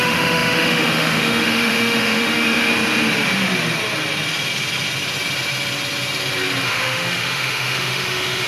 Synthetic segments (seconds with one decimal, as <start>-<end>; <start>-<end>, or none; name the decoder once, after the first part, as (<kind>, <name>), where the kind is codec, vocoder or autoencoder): 0.0-2.7 (autoencoder, DAC-VAE); 6.6-8.5